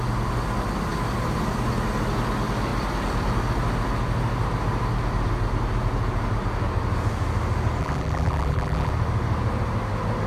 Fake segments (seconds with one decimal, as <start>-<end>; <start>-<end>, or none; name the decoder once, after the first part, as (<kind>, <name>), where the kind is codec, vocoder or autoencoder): 7.8-8.9 (vocoder, BigVGAN v2)